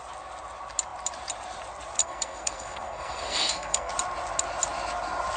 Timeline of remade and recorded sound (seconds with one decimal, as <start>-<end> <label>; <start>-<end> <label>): 0.0-2.0 recorded; 2.0-3.9 remade; 3.9-5.4 recorded